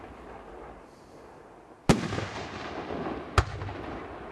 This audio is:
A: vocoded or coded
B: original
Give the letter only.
B